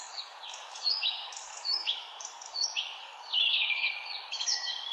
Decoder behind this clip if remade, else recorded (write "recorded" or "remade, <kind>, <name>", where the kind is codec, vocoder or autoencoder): remade, codec, DAC